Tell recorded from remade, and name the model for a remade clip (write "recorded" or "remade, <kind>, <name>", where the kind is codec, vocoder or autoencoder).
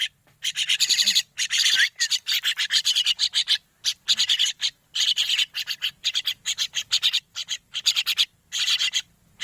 remade, vocoder, BigVGAN v2